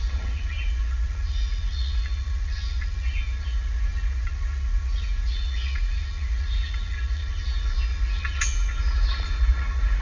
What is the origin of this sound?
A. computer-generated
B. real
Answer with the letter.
A